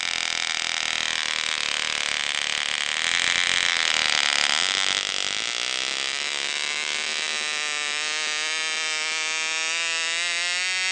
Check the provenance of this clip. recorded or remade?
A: recorded